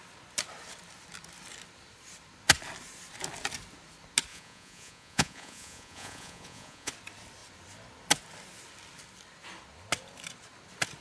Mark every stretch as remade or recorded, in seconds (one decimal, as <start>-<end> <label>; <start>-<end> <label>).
0.0-4.3 recorded; 4.3-6.9 remade; 6.9-11.0 recorded